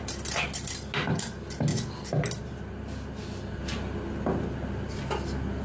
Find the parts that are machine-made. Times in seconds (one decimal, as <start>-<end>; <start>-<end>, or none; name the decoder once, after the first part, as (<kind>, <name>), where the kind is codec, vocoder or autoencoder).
none

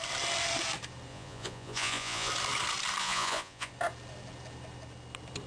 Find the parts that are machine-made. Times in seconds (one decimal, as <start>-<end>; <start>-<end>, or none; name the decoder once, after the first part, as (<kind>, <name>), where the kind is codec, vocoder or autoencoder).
1.1-2.3 (vocoder, Vocos); 3.0-3.7